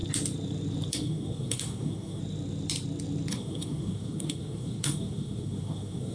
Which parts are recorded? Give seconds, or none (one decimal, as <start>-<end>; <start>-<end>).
0.0-0.9; 2.2-3.3